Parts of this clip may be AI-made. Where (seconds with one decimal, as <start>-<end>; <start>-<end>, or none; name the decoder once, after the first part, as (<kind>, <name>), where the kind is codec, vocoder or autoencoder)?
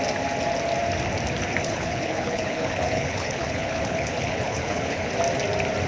1.6-5.1 (codec, HILCodec)